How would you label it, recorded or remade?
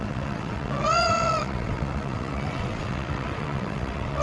remade